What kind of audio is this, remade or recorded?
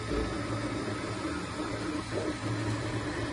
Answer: recorded